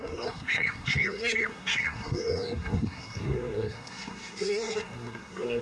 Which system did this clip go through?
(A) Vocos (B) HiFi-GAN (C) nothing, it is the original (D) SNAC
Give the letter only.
D